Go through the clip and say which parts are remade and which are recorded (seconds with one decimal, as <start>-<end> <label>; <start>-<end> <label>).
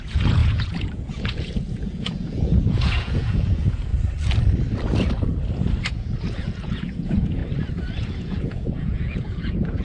0.0-3.9 remade; 3.9-5.9 recorded; 5.9-7.4 remade; 7.4-8.0 recorded; 8.0-9.8 remade